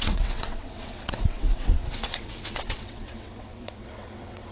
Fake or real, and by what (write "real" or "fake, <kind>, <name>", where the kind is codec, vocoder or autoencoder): fake, vocoder, WaveNeXt